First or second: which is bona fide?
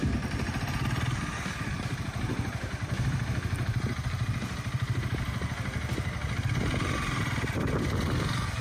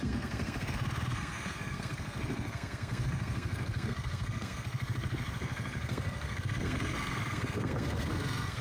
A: first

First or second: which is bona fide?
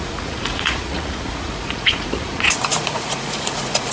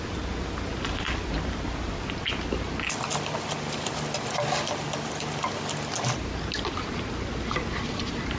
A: second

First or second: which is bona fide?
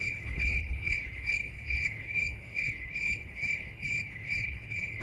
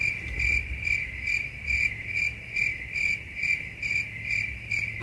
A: second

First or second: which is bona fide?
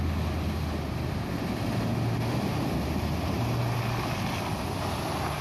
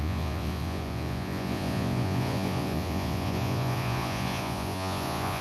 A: first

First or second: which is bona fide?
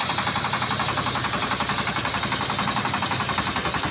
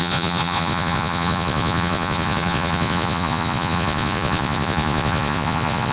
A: first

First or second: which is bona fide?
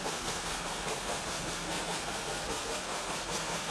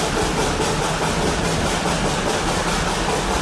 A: second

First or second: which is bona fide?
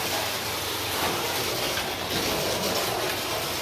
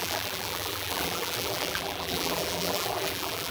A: first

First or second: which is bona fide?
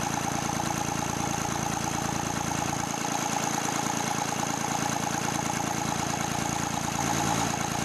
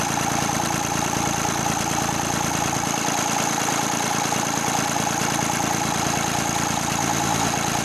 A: first